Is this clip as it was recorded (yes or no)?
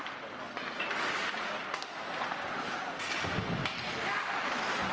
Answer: yes